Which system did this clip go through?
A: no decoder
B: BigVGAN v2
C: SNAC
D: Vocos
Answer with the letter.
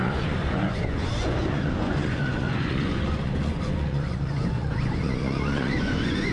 D